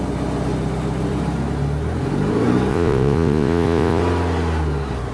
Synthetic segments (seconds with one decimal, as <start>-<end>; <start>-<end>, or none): 2.7-4.0